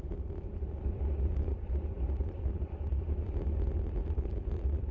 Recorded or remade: remade